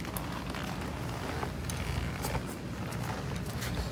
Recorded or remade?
recorded